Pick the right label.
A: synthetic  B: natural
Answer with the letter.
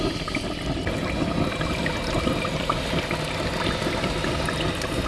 B